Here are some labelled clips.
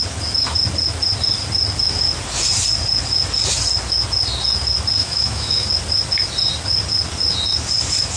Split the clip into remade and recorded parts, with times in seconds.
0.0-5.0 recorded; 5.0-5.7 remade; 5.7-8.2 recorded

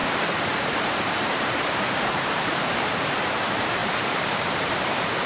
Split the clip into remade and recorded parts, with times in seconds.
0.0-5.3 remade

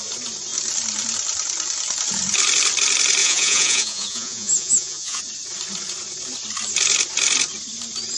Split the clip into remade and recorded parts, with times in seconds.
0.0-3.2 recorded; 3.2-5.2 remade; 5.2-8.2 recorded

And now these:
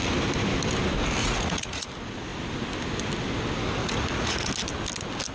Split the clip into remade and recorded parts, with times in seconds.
0.0-1.2 recorded; 1.2-1.9 remade; 1.9-3.8 recorded; 3.8-4.5 remade; 4.5-5.3 recorded

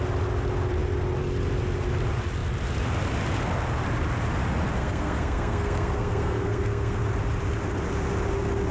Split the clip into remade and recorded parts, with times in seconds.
0.0-4.8 recorded; 4.8-7.0 remade; 7.0-8.7 recorded